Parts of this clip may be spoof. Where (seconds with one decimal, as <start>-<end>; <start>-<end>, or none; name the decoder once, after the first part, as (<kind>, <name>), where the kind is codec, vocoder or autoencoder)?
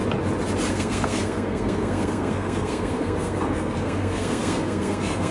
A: 0.7-5.3 (codec, SNAC)